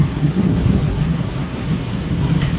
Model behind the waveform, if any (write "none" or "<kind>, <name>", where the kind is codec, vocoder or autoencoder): codec, SNAC